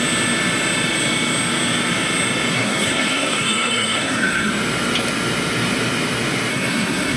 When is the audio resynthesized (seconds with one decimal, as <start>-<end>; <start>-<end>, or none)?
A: 2.5-4.5; 6.5-7.2